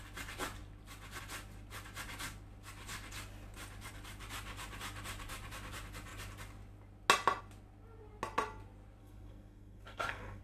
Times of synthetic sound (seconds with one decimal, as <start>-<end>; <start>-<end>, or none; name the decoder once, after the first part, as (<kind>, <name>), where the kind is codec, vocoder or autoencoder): 9.0-10.4 (codec, SNAC)